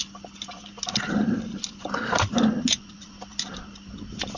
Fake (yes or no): no